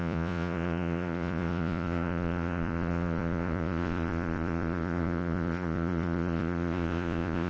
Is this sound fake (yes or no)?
yes